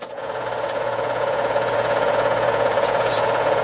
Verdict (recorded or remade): remade